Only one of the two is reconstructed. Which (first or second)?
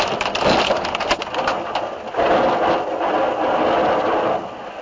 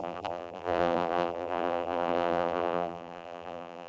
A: second